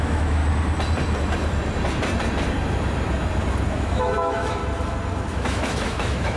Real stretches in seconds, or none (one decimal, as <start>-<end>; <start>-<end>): 0.4-3.7; 4.6-5.3